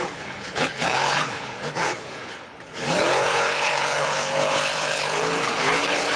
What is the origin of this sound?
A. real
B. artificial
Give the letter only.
B